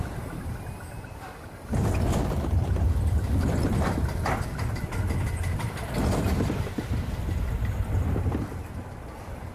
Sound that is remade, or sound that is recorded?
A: recorded